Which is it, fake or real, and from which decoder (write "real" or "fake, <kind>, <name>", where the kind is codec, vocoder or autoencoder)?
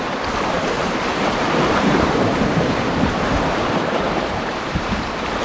fake, vocoder, BigVGAN v2